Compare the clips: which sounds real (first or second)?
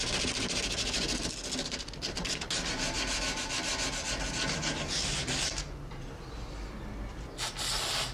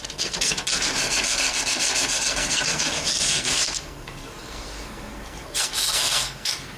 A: first